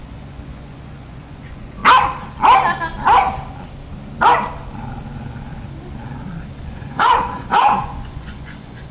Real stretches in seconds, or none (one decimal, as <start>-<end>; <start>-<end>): 1.8-6.6